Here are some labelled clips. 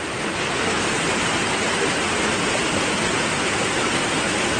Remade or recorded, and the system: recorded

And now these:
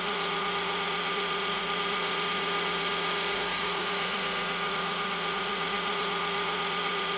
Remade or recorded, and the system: remade, vocoder, Vocos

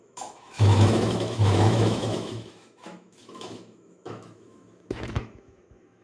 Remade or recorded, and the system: remade, autoencoder, DAC-VAE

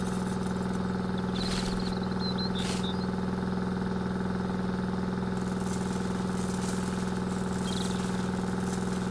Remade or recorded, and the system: recorded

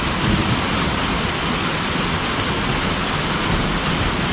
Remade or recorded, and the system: recorded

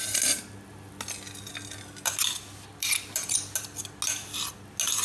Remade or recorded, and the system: recorded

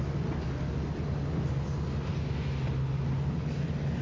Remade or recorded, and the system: recorded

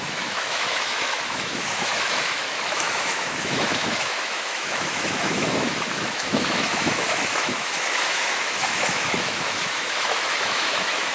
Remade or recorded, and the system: remade, autoencoder, DAC-VAE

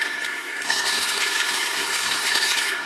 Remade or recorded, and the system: remade, codec, SNAC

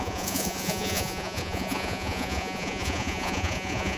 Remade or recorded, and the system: remade, vocoder, Vocos